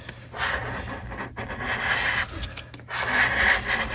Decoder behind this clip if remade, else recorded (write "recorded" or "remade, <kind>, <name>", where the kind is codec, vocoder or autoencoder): recorded